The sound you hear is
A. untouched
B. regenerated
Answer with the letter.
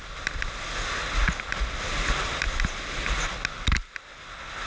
A